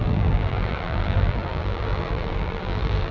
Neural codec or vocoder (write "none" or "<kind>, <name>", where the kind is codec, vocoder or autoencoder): vocoder, BigVGAN v2